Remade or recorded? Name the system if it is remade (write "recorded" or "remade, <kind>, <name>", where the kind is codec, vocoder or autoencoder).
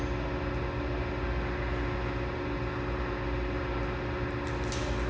recorded